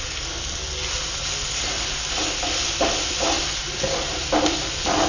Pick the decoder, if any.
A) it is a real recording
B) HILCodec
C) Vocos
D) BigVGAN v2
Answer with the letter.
A